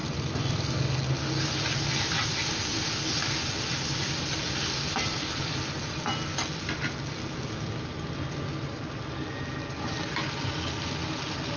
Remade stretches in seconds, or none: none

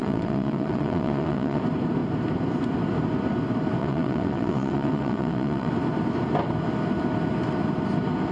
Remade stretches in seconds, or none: 0.0-1.6 (vocoder, WaveNeXt); 3.8-5.7

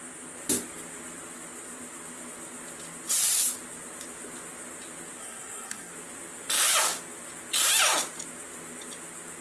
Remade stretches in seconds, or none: 5.2-5.9 (codec, SNAC)

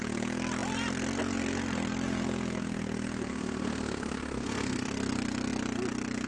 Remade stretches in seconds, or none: 3.3-4.9 (codec, SNAC)

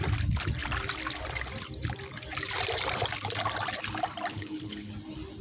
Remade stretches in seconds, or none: 4.3-4.9 (codec, HILCodec)